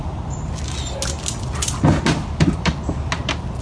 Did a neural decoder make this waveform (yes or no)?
no